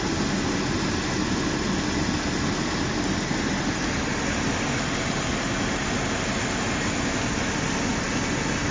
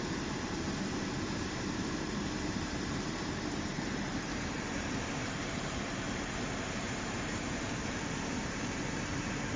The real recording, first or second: first